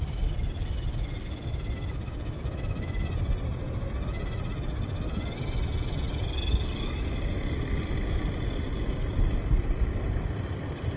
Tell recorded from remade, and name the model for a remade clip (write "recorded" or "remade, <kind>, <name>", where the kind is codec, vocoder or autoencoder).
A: recorded